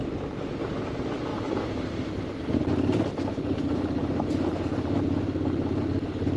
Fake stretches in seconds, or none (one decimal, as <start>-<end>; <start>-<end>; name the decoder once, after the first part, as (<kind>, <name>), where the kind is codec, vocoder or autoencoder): 0.0-6.4 (vocoder, BigVGAN v2)